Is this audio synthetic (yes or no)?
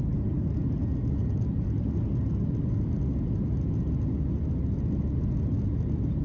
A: no